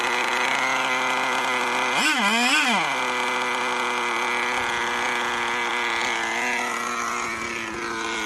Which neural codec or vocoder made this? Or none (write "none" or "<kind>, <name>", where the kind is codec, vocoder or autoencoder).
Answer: none